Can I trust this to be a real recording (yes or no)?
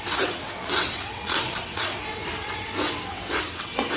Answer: no